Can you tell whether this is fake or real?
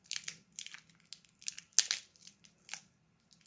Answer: real